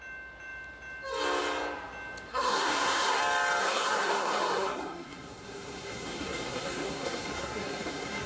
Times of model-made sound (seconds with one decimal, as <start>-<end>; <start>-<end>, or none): 2.3-3.2; 3.6-8.3